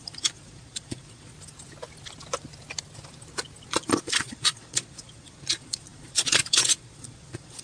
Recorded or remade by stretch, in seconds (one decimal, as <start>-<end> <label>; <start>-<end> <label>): 0.0-1.3 remade; 1.3-3.7 recorded; 3.7-7.6 remade